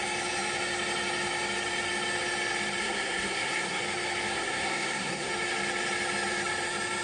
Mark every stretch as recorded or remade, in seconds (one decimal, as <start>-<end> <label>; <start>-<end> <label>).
0.0-2.8 recorded; 2.8-3.8 remade; 3.8-4.3 recorded; 4.3-5.3 remade; 5.3-7.0 recorded